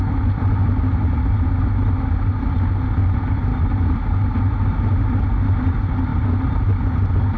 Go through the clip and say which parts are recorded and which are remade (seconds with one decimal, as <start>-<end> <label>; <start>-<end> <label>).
0.0-7.4 recorded